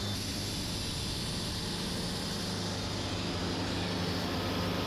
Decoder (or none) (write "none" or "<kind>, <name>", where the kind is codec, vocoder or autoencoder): none